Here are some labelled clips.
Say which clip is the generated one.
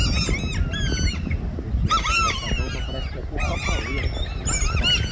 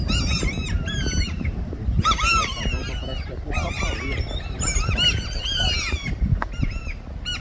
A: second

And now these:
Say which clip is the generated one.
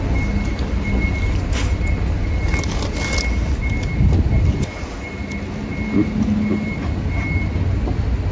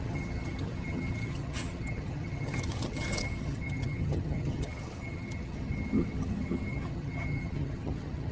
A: second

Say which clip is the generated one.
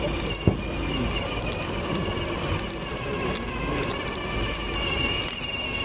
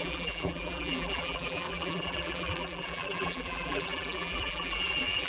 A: second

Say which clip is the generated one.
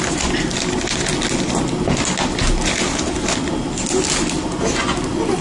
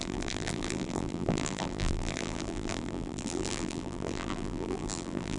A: second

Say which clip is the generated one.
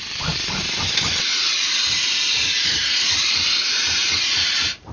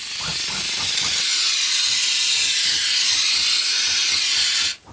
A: first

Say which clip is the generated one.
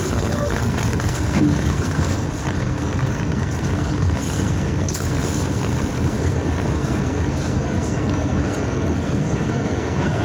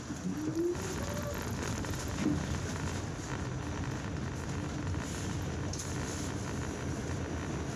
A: first